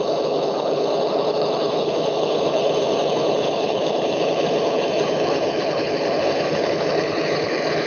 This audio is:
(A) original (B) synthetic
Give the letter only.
B